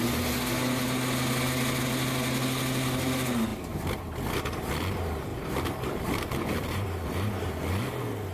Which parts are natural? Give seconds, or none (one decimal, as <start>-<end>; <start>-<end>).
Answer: 0.0-5.3; 7.8-8.3